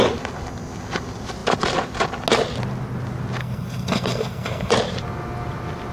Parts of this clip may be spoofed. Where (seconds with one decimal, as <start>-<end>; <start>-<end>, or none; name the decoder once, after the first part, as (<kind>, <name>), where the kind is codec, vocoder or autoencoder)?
3.4-4.7 (codec, SNAC)